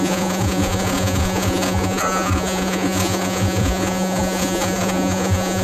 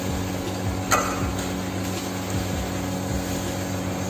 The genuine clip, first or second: second